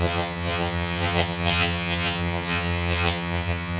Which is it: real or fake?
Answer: fake